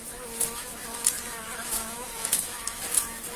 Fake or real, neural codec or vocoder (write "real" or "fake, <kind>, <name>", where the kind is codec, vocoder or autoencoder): fake, autoencoder, DAC-VAE